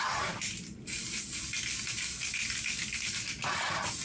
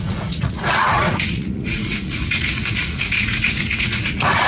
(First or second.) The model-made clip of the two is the second